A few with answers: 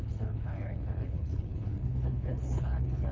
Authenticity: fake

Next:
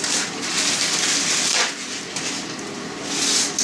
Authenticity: real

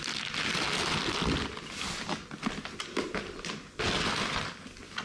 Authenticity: real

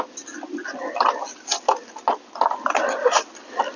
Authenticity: real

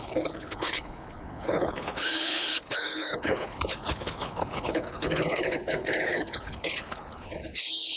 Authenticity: fake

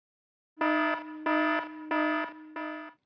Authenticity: real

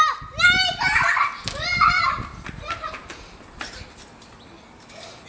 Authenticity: real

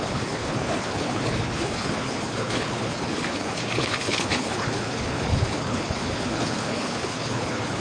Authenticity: fake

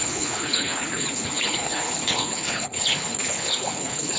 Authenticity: fake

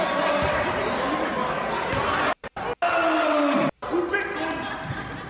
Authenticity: real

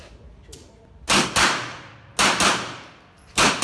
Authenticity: real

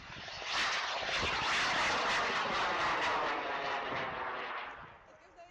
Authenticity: real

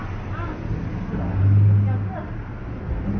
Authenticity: real